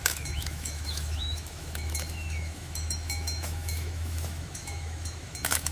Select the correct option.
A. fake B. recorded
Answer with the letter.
A